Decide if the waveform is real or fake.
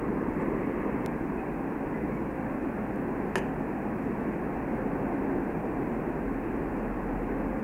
real